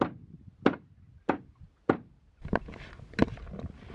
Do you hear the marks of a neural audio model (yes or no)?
no